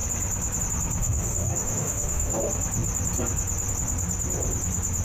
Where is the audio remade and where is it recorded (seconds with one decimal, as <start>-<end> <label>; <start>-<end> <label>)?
0.0-1.0 recorded; 1.0-2.4 remade; 2.4-5.0 recorded